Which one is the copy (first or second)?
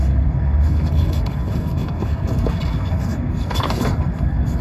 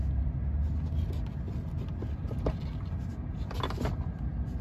first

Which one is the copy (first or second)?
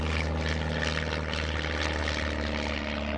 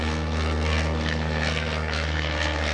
second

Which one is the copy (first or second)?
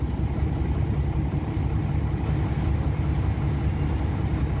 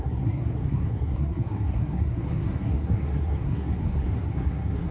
second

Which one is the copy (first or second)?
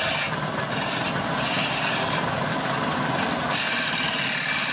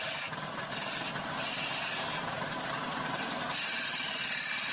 second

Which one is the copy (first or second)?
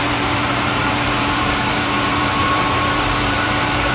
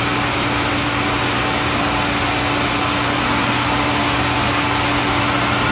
first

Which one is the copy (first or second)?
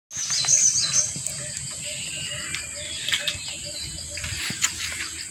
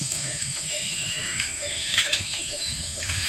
second